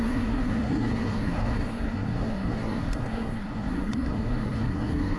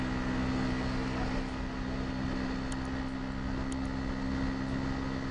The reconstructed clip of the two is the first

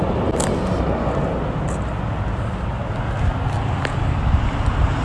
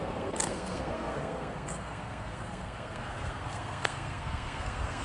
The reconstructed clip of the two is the second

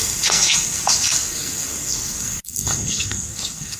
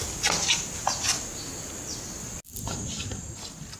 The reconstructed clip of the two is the first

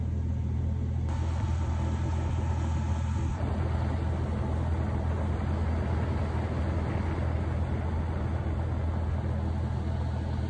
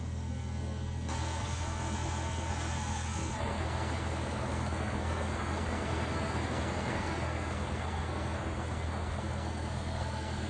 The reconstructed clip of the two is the second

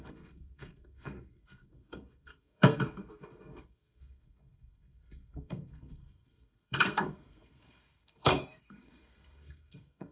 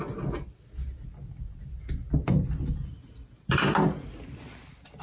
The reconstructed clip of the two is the first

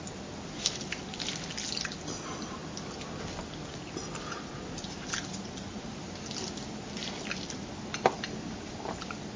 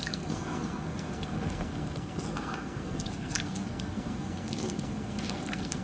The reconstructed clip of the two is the second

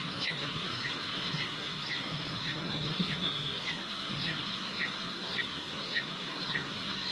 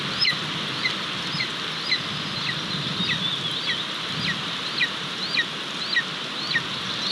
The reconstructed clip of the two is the first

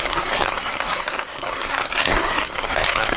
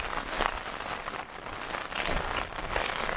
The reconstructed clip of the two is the first